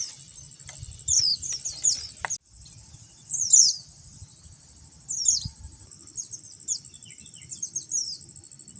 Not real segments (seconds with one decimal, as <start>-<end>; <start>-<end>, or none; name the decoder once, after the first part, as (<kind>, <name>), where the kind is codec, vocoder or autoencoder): none